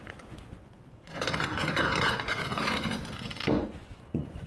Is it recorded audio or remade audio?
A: remade